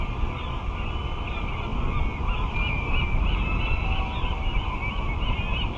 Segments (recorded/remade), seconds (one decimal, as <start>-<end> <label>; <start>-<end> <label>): 0.0-5.8 recorded